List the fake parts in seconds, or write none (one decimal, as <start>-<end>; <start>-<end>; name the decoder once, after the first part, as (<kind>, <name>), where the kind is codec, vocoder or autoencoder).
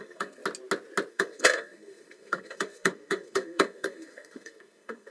0.0-0.4 (codec, SNAC); 1.1-5.1